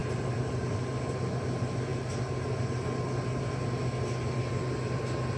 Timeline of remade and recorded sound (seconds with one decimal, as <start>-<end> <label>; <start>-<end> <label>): 0.0-5.4 recorded